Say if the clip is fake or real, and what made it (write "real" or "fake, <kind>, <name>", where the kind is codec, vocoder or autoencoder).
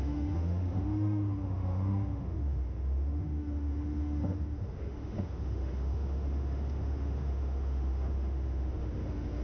fake, autoencoder, DAC-VAE